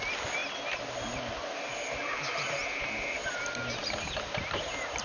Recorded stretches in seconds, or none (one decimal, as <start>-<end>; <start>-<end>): 0.0-5.0